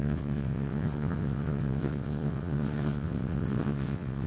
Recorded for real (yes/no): no